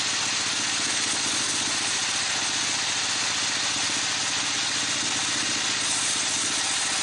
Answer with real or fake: real